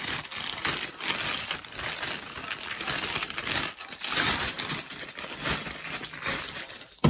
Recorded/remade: recorded